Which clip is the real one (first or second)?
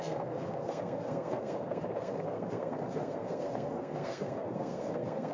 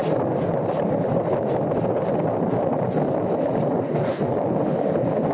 second